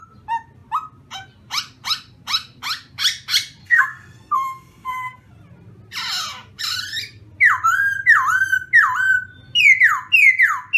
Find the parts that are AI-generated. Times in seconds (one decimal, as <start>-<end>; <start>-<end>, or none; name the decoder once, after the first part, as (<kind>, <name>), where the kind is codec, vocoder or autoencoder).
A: 3.6-5.3 (codec, SNAC)